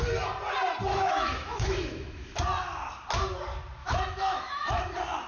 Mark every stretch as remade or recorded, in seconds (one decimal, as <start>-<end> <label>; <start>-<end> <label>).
0.0-0.9 recorded; 0.9-2.4 remade; 2.4-3.8 recorded; 3.8-4.8 remade; 4.8-5.3 recorded

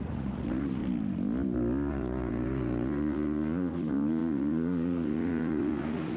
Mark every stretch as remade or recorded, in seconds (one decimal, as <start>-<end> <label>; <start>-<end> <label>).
0.0-0.8 remade; 0.8-1.9 recorded; 1.9-6.2 remade

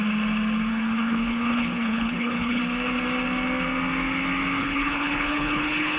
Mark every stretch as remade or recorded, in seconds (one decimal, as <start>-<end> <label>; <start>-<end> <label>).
0.0-0.7 recorded; 0.7-2.6 remade; 2.6-4.6 recorded; 4.6-6.0 remade

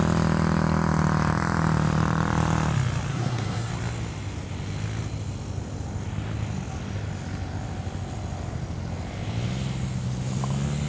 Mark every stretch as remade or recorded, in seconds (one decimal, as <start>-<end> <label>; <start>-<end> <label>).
0.0-3.1 recorded; 3.1-3.7 remade; 3.7-10.9 recorded

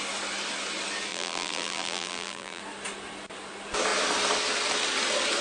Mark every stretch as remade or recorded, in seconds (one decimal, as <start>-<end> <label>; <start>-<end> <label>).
0.0-1.1 recorded; 1.1-2.6 remade; 2.6-5.4 recorded

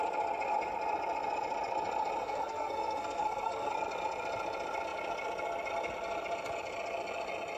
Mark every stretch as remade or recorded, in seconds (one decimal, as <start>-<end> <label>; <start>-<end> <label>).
0.0-2.2 recorded; 2.2-3.7 remade; 3.7-7.6 recorded

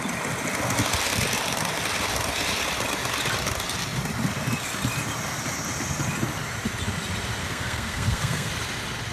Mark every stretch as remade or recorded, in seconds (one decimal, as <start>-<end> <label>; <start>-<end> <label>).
0.0-7.4 recorded; 7.4-8.5 remade; 8.5-9.1 recorded